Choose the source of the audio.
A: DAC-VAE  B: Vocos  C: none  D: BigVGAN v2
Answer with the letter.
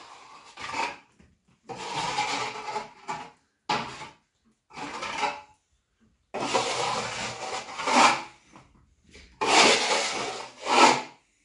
C